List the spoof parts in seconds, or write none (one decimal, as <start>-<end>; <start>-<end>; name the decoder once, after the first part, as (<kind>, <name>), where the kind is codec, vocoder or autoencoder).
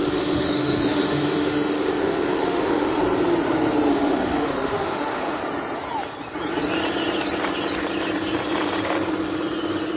0.0-3.0 (autoencoder, DAC-VAE); 3.9-5.4